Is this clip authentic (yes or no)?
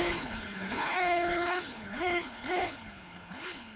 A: no